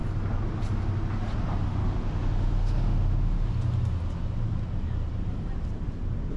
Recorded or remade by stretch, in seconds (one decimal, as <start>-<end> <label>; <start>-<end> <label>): 0.0-1.8 recorded; 1.8-3.5 remade; 3.5-6.4 recorded